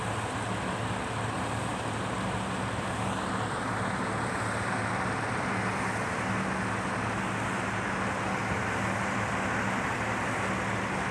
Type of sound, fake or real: real